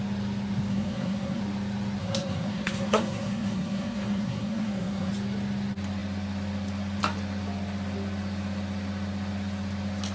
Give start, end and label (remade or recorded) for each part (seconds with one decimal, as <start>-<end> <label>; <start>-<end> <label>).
0.0-0.7 recorded; 0.7-1.4 remade; 1.4-2.0 recorded; 2.0-5.1 remade; 5.1-10.1 recorded